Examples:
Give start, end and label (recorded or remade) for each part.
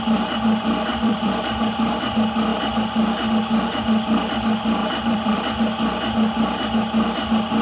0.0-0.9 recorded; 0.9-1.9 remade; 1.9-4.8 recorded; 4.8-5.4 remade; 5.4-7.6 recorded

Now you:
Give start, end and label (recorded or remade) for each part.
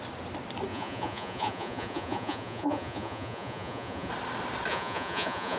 0.0-0.7 recorded; 0.7-4.1 remade; 4.1-4.7 recorded; 4.7-5.6 remade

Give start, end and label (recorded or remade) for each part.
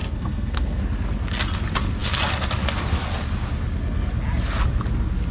0.0-0.8 remade; 0.8-5.3 recorded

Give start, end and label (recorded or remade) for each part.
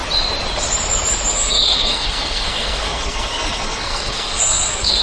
0.0-1.3 recorded; 1.3-5.0 remade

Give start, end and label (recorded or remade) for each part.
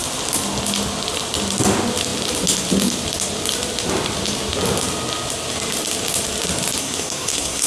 0.0-6.8 recorded; 6.8-7.7 remade